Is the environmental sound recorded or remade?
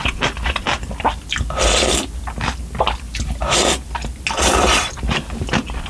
recorded